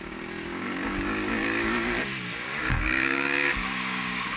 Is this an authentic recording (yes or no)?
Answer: no